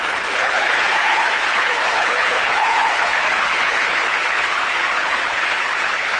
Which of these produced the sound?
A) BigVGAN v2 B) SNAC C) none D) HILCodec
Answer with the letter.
D